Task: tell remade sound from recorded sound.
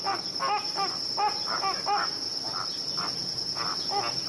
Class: recorded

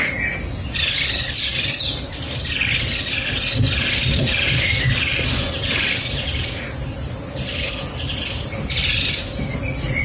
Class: recorded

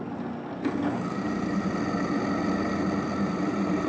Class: recorded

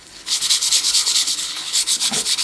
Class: remade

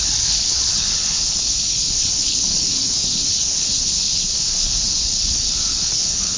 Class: remade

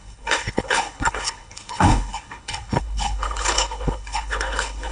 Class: remade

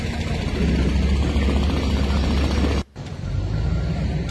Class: recorded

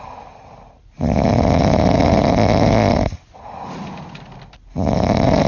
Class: recorded